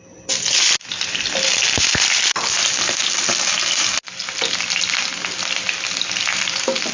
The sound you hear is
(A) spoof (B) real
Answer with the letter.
B